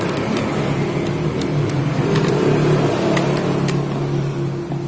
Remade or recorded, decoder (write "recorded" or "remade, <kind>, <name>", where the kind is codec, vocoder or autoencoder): recorded